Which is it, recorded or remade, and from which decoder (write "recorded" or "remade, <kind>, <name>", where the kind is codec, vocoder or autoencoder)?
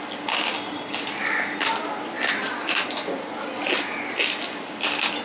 recorded